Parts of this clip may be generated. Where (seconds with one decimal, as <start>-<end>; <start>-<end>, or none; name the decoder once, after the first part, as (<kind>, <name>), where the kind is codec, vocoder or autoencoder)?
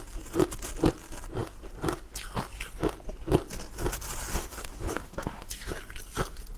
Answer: 4.3-5.7 (codec, DAC)